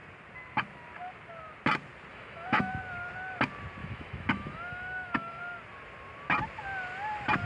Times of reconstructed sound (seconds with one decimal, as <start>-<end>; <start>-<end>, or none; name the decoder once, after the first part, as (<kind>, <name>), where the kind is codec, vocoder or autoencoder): 2.1-2.7 (autoencoder, DAC-VAE); 3.8-5.4